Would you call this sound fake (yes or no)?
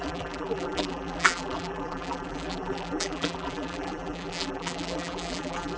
yes